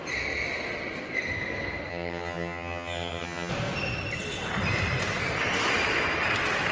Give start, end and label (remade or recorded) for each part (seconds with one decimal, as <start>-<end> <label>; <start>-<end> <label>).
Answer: 0.0-1.9 recorded; 1.9-3.5 remade; 3.5-6.7 recorded